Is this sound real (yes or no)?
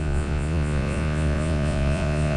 no